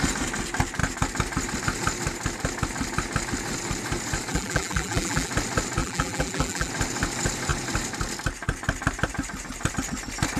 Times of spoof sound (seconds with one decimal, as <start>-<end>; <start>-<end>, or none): 4.3-5.3; 5.8-6.7